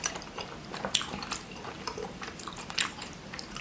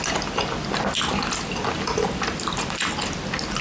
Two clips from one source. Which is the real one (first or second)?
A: second